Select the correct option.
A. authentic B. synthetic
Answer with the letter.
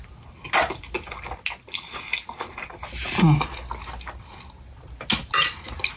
A